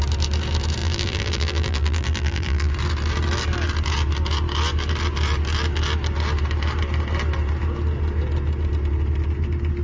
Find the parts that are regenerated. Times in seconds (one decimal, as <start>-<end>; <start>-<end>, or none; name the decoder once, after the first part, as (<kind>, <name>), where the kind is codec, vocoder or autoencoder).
0.8-2.7 (vocoder, BigVGAN v2)